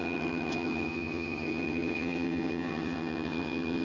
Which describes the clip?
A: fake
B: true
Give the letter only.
A